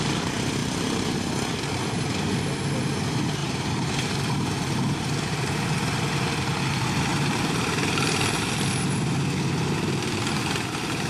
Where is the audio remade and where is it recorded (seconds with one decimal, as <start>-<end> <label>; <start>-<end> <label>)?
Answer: 0.0-3.4 recorded; 3.4-4.1 remade; 4.1-7.1 recorded; 7.1-8.4 remade; 8.4-11.1 recorded